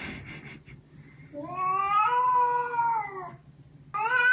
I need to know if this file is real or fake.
real